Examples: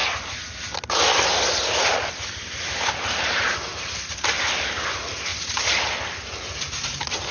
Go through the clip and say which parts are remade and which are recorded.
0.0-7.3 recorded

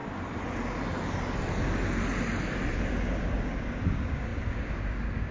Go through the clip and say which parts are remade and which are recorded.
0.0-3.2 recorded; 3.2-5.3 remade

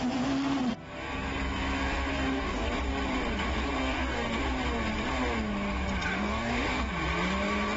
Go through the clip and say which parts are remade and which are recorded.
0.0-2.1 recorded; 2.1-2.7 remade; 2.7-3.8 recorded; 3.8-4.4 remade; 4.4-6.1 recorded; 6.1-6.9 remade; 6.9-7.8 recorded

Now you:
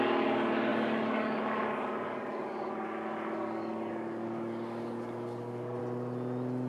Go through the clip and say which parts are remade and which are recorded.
0.0-5.8 remade; 5.8-6.7 recorded

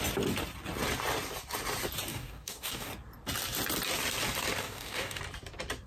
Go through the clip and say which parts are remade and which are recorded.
0.0-2.1 recorded; 2.1-2.9 remade; 2.9-4.6 recorded; 4.6-5.2 remade; 5.2-5.9 recorded

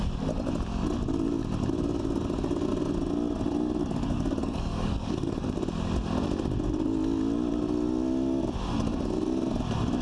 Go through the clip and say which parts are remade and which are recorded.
0.0-3.8 recorded; 3.8-5.4 remade; 5.4-10.0 recorded

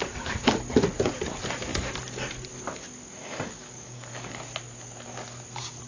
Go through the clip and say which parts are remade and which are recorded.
0.0-3.2 recorded; 3.2-4.3 remade; 4.3-5.9 recorded